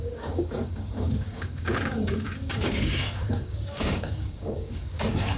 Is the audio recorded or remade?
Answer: remade